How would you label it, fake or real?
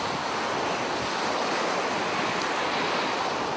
real